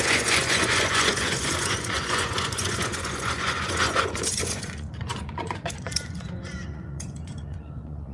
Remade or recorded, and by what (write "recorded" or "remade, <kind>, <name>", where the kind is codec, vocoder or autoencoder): remade, vocoder, Vocos